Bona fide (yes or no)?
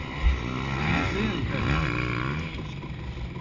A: yes